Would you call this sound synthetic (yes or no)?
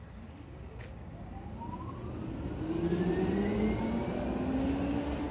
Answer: no